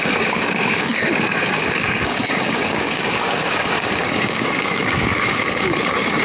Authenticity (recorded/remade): remade